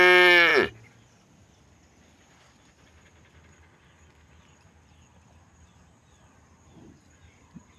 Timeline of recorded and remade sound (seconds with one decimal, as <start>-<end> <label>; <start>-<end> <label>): 0.0-7.8 recorded